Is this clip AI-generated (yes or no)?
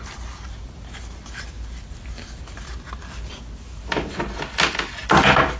no